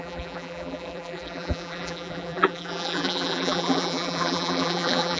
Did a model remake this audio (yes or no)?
yes